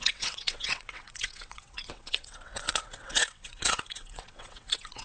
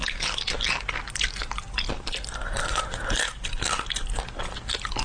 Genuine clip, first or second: second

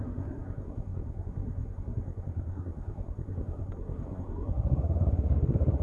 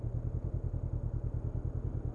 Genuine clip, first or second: second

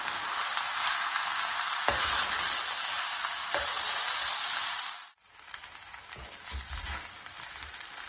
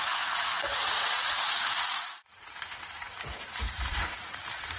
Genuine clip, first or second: first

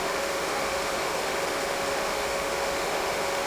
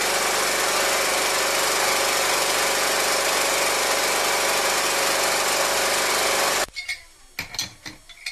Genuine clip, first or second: second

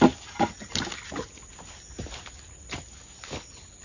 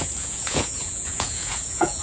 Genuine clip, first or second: first